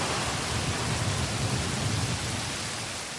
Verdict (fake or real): real